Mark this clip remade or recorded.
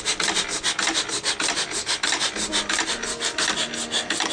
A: recorded